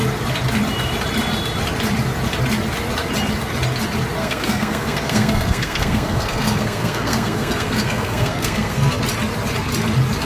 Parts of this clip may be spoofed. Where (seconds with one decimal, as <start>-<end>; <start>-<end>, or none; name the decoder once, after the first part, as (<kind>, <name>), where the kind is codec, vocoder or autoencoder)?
4.2-9.0 (codec, SNAC)